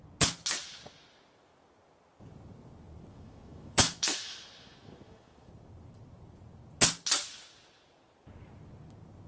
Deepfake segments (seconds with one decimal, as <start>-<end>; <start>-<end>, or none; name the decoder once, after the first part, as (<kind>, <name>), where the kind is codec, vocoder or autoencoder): 3.1-5.5 (autoencoder, DAC-VAE)